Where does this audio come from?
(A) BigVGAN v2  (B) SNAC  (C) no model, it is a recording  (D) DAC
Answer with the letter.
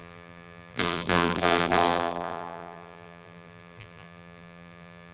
A